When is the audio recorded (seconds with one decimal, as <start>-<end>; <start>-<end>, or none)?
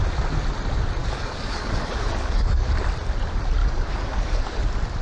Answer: 0.0-1.0; 2.7-3.6; 4.6-5.0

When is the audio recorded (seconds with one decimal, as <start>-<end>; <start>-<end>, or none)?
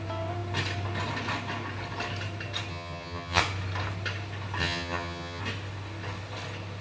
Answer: 0.0-2.7; 3.4-4.6; 5.4-6.8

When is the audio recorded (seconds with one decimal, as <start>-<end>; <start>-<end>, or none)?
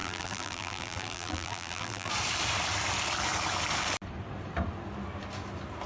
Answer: 2.1-5.9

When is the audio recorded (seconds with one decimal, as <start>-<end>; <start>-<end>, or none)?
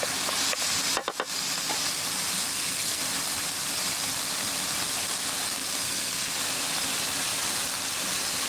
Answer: 0.0-2.5; 3.0-5.6; 6.3-8.5